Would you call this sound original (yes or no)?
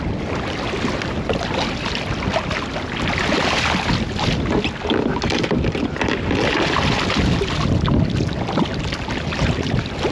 yes